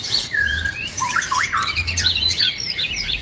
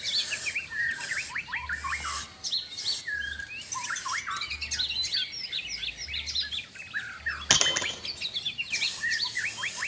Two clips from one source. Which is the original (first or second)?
second